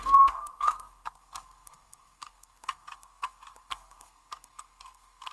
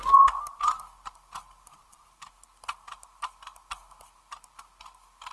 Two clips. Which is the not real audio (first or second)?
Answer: first